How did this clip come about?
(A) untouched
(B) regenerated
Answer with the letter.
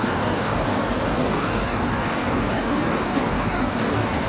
B